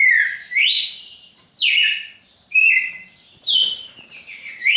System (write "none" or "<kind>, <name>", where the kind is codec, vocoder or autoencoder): vocoder, BigVGAN v2